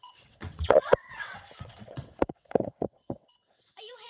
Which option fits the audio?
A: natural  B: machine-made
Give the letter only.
B